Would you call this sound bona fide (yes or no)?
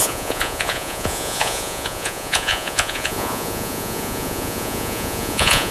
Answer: no